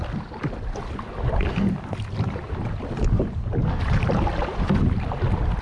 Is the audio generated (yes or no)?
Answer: no